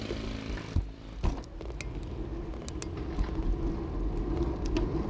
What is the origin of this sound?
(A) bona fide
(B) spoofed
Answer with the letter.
A